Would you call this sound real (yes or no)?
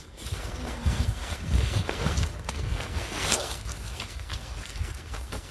no